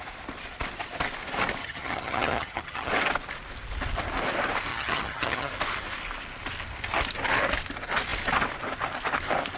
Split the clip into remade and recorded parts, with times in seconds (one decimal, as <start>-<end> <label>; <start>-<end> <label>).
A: 0.0-1.6 recorded; 1.6-2.9 remade; 2.9-4.7 recorded; 4.7-5.5 remade; 5.5-9.6 recorded